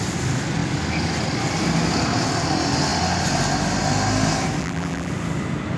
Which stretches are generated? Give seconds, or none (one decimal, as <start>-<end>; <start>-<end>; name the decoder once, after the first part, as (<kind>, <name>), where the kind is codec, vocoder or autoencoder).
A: 4.6-5.1 (vocoder, BigVGAN v2)